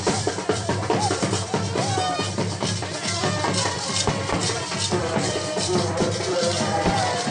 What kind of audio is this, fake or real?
fake